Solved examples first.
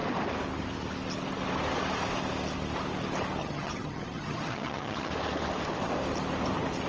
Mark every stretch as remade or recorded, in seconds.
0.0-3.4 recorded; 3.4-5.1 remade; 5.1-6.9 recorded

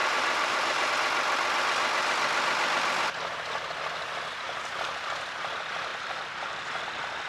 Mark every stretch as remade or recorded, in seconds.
0.0-0.9 remade; 0.9-7.3 recorded

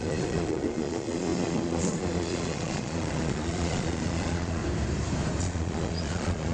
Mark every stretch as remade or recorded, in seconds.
0.0-4.6 remade; 4.6-5.4 recorded; 5.4-6.5 remade

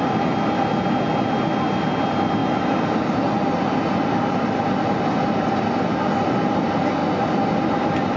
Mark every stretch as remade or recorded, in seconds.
0.0-8.2 recorded

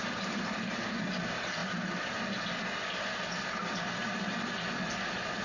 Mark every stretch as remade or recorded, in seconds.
0.0-5.4 recorded

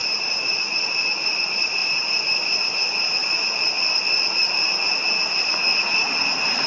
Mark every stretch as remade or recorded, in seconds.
0.0-0.6 remade; 0.6-1.8 recorded; 1.8-2.8 remade; 2.8-3.2 recorded; 3.2-3.8 remade; 3.8-6.7 recorded